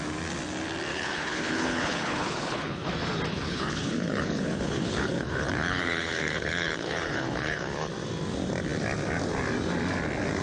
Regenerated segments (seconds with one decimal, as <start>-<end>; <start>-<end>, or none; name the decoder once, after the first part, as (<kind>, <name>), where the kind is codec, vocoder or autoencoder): 0.9-2.9 (codec, HILCodec); 3.3-7.9